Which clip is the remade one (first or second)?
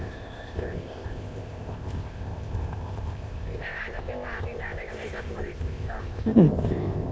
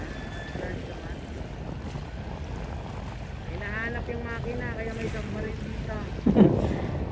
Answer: first